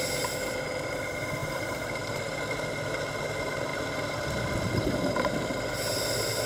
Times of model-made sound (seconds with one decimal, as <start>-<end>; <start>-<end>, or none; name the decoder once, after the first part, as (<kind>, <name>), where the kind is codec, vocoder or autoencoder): 1.4-2.4 (vocoder, BigVGAN v2)